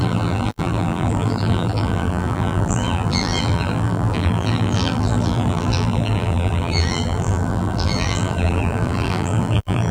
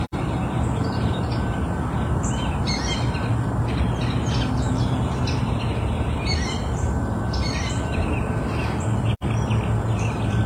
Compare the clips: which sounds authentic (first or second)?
second